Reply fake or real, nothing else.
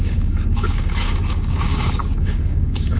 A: fake